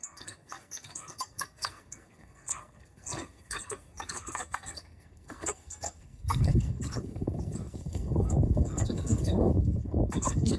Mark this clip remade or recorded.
remade